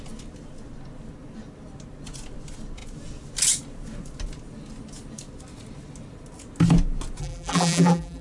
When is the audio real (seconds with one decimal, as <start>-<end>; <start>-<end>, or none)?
0.0-7.2